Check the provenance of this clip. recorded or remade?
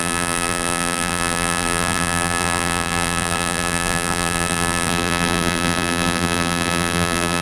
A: remade